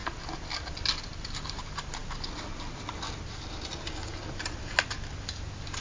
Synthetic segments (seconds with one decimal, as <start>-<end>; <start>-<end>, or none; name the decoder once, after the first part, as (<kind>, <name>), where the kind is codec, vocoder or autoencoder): none